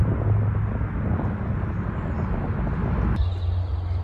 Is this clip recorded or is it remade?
recorded